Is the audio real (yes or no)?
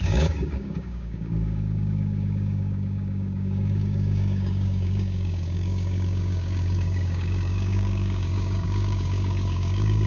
no